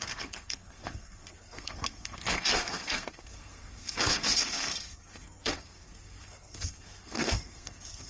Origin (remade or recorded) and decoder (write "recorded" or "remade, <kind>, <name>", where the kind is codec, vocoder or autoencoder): remade, codec, SNAC